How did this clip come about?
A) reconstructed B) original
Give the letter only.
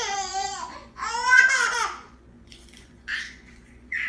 A